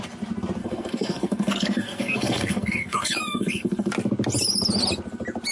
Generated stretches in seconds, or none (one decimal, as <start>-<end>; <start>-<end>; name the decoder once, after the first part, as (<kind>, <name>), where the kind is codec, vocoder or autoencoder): 0.6-3.9 (codec, SNAC)

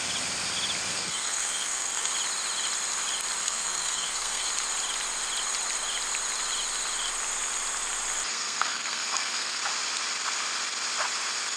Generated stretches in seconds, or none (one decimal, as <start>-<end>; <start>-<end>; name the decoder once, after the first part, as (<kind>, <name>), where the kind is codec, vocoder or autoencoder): 0.9-2.1 (codec, SNAC); 3.4-4.5; 8.3-9.6